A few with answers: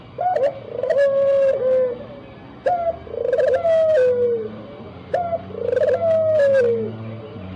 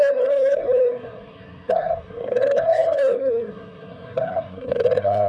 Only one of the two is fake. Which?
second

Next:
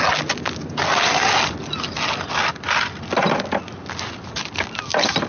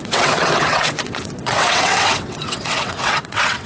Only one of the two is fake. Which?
second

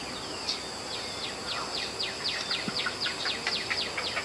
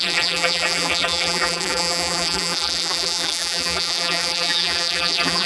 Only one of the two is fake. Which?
second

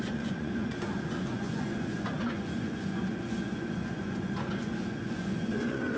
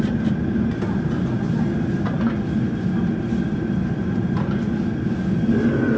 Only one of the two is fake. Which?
first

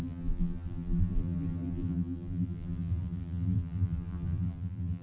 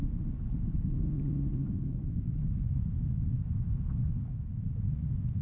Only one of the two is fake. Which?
first